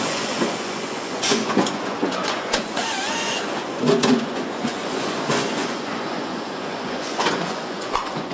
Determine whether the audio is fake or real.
fake